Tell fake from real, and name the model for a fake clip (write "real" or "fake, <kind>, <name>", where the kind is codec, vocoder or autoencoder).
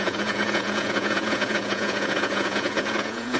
fake, vocoder, Vocos